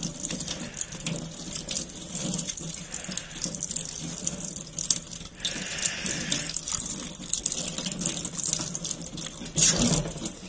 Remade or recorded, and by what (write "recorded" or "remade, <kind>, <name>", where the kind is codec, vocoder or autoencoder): recorded